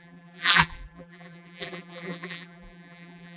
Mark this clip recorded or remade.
remade